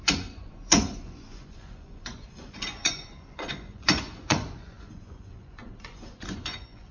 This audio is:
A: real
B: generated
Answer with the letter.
B